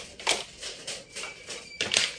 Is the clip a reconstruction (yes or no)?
no